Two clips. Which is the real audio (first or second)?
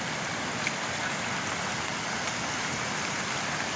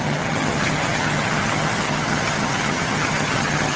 first